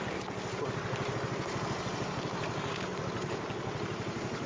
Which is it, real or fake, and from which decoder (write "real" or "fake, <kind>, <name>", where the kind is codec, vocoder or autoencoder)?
real